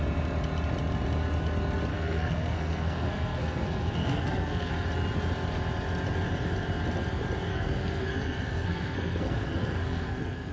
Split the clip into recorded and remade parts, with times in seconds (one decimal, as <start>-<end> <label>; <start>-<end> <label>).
0.0-1.9 recorded; 1.9-4.7 remade; 4.7-7.5 recorded; 7.5-10.5 remade